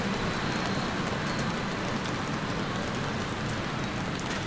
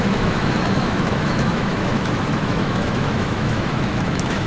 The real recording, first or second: first